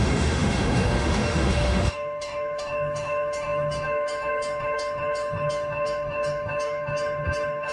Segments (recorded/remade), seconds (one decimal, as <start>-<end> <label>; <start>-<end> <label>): 0.0-7.7 remade